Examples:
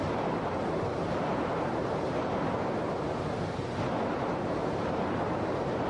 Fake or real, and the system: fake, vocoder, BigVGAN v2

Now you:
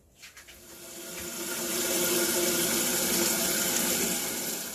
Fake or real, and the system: real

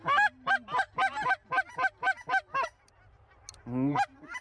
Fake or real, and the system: real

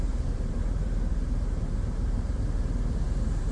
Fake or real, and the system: fake, vocoder, BigVGAN v2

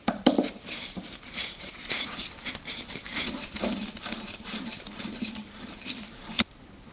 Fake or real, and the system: fake, vocoder, BigVGAN v2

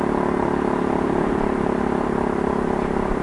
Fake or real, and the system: fake, vocoder, BigVGAN v2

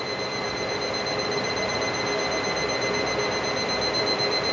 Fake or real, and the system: real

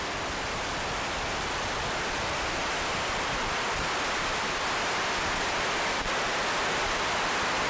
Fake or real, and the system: fake, vocoder, BigVGAN v2